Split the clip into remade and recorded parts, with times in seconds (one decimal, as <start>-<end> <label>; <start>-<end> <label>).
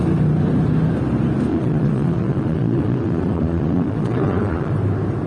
0.0-1.5 recorded; 1.5-4.7 remade; 4.7-5.3 recorded